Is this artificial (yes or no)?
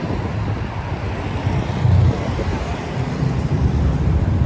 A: no